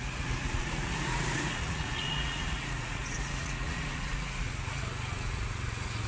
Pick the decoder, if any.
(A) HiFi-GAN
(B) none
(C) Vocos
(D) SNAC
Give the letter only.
C